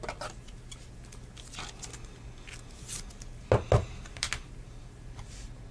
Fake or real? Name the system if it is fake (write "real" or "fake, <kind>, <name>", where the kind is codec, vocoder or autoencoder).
real